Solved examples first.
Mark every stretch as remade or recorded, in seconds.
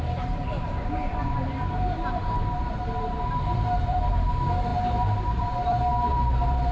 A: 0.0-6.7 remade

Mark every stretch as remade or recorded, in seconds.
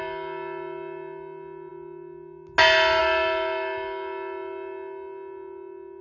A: 0.0-6.0 recorded